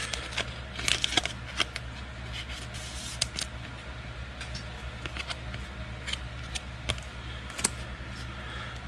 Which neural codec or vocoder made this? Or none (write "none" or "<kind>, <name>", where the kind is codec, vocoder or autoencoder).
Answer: none